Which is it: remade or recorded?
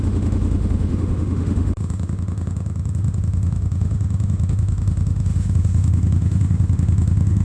remade